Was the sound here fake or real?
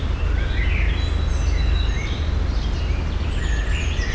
real